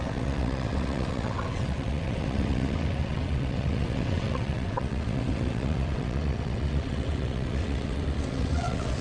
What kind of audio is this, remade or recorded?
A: remade